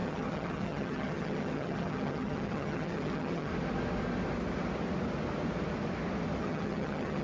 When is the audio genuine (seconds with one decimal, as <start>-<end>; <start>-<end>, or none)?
3.5-6.4